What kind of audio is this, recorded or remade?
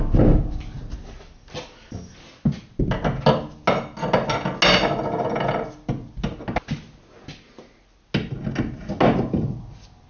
recorded